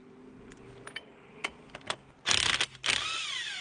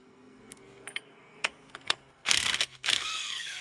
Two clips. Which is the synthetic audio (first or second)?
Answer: second